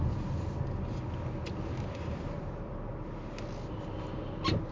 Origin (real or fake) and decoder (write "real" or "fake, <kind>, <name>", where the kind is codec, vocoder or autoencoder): real